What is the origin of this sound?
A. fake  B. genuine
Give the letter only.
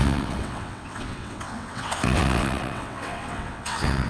A